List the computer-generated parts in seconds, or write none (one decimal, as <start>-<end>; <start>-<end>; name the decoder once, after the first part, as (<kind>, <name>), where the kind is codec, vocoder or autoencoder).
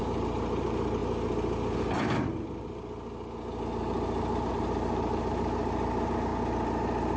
0.0-1.0 (vocoder, BigVGAN v2); 4.5-6.3